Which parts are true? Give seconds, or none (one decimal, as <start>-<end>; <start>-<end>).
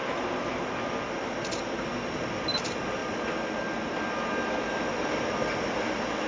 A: 0.0-6.3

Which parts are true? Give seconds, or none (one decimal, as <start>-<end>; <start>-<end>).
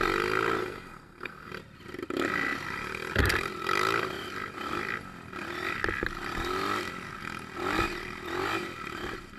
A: 0.0-0.6; 1.5-9.4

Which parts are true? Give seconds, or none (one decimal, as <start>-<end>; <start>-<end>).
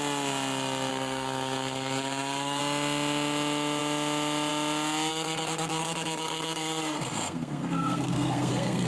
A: 0.0-0.9; 2.6-5.1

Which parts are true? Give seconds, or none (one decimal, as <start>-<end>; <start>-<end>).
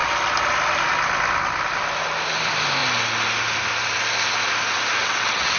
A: 0.0-5.0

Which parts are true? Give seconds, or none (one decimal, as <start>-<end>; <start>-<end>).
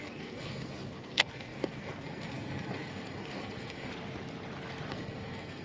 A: 3.9-4.9